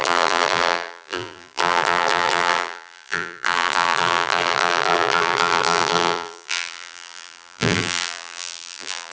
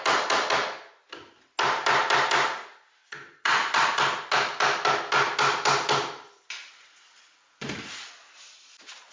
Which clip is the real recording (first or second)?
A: second